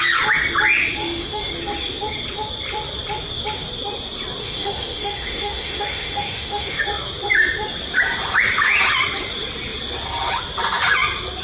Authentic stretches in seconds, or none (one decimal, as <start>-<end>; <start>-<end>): 0.0-1.0; 1.5-4.4; 6.8-11.4